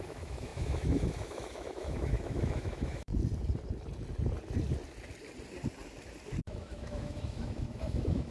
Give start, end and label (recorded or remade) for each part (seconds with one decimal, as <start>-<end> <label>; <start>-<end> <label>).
0.0-3.1 remade; 3.1-6.4 recorded; 6.4-8.3 remade